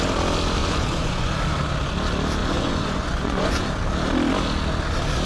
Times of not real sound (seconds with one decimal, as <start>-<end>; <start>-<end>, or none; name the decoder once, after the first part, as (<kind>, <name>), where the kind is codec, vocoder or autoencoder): 0.6-1.3 (vocoder, Vocos); 2.4-3.7